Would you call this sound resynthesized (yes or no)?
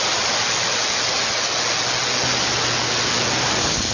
no